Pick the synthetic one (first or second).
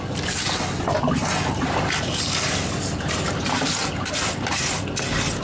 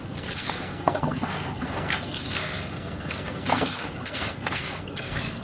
second